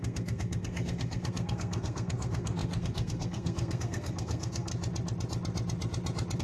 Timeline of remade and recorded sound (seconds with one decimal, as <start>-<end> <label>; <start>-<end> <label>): 0.0-4.7 remade; 4.7-6.4 recorded